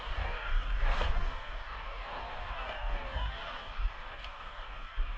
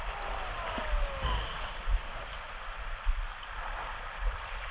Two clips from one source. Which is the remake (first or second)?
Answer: first